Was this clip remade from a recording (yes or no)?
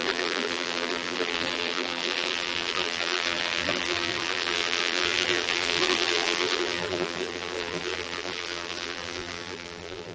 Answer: yes